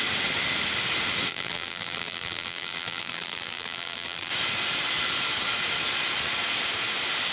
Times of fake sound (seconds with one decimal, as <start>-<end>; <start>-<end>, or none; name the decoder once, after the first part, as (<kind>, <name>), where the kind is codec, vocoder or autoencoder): 1.3-4.3 (vocoder, BigVGAN v2)